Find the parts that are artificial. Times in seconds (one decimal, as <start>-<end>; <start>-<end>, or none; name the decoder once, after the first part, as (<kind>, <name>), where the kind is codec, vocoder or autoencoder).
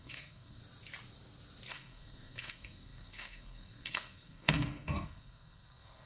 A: 0.0-0.6 (codec, SNAC); 1.7-6.1